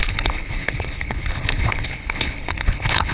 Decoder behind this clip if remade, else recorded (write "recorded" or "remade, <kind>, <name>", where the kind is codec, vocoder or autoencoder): remade, codec, HILCodec